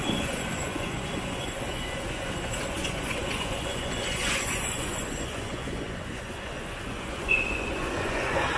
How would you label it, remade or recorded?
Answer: remade